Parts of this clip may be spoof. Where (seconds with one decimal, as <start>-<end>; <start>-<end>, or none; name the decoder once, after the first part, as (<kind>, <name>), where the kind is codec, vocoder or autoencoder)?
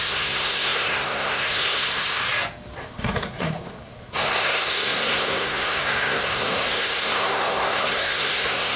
0.0-2.2 (codec, SNAC); 2.8-8.8